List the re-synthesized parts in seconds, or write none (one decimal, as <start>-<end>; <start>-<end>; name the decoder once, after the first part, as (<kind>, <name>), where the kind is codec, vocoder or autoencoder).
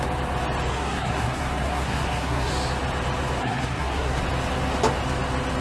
0.7-2.5 (codec, SNAC); 3.4-4.2